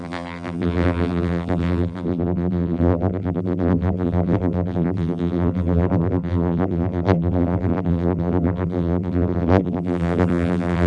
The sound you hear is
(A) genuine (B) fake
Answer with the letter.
B